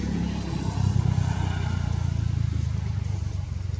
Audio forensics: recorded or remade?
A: recorded